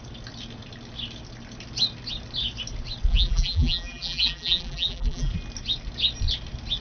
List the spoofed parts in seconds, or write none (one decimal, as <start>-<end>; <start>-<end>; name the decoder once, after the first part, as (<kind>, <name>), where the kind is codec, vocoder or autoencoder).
3.1-5.3 (vocoder, BigVGAN v2)